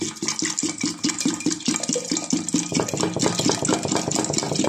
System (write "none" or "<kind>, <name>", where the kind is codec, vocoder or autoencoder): none